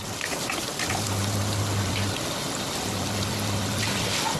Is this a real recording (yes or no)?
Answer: yes